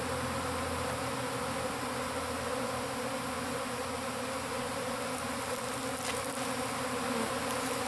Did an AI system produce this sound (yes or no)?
no